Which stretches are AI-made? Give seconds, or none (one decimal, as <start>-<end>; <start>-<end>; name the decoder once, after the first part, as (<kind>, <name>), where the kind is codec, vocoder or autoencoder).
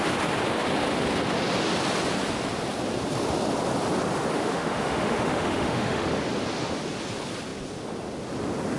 4.3-6.2 (autoencoder, DAC-VAE)